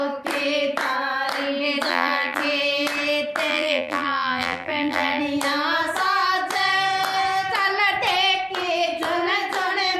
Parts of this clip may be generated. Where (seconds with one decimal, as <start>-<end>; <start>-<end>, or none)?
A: 1.9-2.4; 3.5-5.2